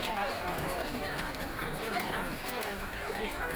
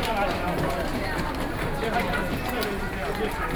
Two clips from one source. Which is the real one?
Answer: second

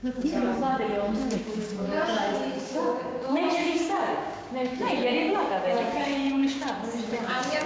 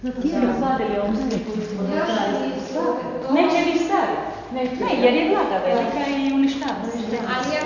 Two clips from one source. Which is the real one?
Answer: second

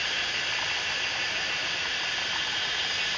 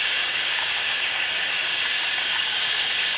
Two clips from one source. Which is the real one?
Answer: first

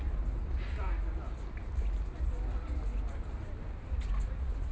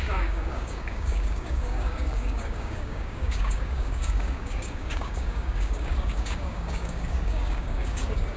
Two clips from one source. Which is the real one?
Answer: first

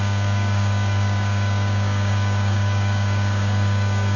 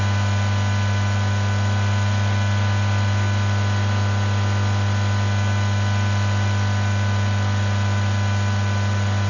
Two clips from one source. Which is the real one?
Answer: second